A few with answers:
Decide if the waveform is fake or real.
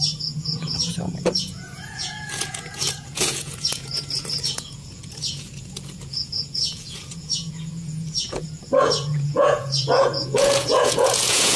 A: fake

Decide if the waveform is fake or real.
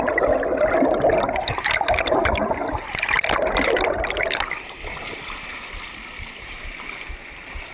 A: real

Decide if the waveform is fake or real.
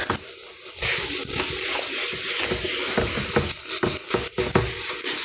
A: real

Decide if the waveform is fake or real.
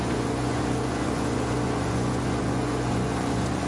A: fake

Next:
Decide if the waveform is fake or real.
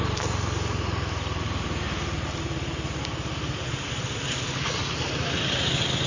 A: real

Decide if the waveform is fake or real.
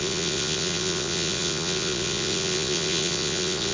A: fake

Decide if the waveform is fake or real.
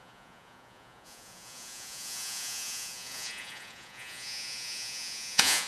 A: fake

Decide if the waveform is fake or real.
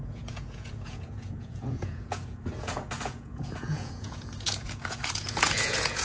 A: fake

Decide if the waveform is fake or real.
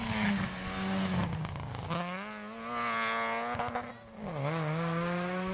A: real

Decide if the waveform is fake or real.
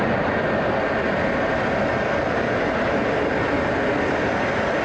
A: real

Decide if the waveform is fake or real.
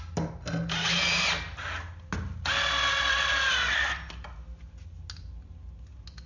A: real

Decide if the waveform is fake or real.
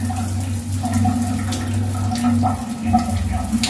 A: real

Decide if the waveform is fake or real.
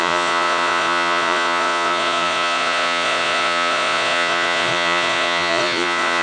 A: fake